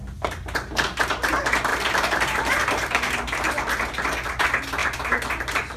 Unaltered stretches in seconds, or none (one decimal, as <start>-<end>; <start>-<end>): 0.0-1.7; 3.6-4.8